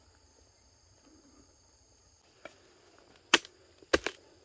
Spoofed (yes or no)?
no